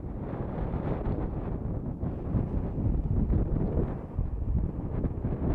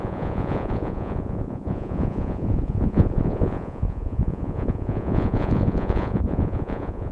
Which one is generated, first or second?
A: second